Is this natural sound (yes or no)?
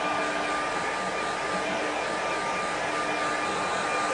yes